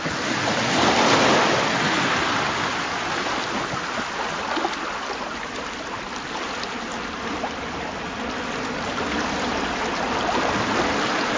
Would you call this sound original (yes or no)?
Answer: yes